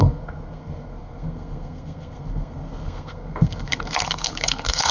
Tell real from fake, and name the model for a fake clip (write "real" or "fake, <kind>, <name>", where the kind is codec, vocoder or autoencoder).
fake, codec, SNAC